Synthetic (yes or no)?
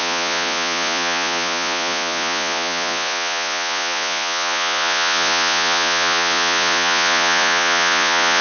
yes